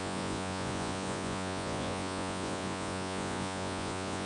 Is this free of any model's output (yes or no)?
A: no